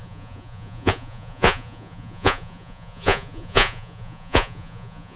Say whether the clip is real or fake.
fake